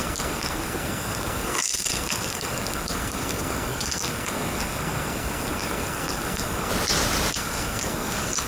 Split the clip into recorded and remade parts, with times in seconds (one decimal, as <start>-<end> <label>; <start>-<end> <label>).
0.0-6.7 remade; 6.7-7.3 recorded; 7.3-8.5 remade